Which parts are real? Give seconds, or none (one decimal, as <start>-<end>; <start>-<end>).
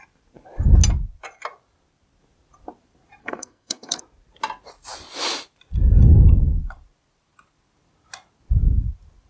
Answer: 0.0-3.2; 4.0-9.3